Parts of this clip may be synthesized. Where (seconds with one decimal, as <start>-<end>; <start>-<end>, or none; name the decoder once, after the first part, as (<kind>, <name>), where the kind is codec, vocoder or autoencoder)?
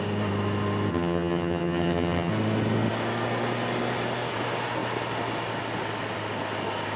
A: 0.9-2.3 (vocoder, HiFi-GAN)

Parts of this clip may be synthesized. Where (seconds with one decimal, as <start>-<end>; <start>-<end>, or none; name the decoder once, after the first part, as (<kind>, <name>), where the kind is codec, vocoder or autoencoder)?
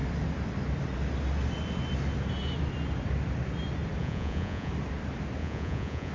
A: 4.0-4.7 (vocoder, Vocos); 5.4-6.1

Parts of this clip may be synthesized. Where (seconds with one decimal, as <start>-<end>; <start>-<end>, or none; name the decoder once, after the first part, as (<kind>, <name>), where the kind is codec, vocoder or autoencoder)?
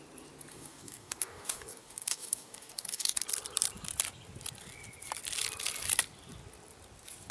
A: 0.5-3.2 (codec, DAC)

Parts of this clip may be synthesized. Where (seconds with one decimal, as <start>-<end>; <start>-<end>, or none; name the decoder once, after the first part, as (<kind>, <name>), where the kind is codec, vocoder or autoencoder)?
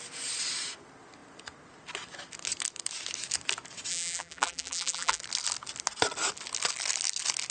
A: 3.9-5.2 (vocoder, BigVGAN v2)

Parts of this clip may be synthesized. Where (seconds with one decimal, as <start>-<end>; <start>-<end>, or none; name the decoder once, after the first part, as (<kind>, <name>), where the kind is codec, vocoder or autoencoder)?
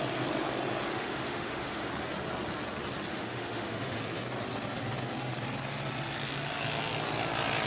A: 0.9-1.9 (autoencoder, DAC-VAE); 3.1-4.0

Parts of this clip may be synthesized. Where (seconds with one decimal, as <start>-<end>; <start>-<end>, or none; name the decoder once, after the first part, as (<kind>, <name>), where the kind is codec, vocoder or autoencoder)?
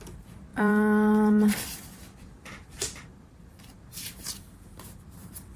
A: 0.5-3.9 (vocoder, BigVGAN v2)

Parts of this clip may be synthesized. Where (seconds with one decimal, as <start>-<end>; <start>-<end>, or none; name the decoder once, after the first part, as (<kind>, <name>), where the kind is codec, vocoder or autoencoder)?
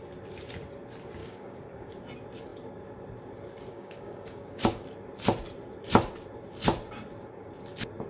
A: 1.2-1.9 (codec, DAC); 3.7-4.8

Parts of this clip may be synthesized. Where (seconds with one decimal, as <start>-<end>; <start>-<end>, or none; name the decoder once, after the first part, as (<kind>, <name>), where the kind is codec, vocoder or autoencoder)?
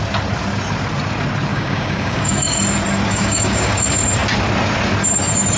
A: 1.5-2.6 (codec, DAC); 3.1-3.8